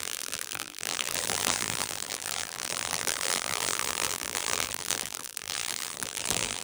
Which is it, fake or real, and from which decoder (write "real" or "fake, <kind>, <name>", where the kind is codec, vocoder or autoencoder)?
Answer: fake, vocoder, BigVGAN v2